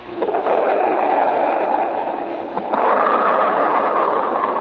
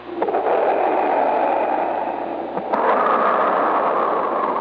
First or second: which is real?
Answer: second